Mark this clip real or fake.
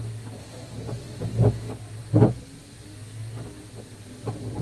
real